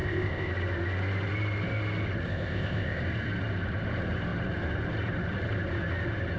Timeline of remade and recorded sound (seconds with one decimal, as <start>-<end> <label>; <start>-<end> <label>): 0.0-0.5 remade; 0.5-2.3 recorded; 2.3-3.0 remade; 3.0-6.4 recorded